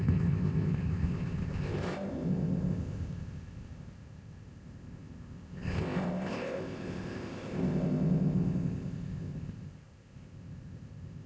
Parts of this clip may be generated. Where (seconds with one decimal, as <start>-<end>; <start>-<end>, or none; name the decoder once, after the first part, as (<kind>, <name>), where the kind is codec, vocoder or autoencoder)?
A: 0.0-11.3 (codec, ZipCodec)